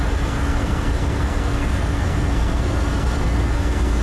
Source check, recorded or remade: remade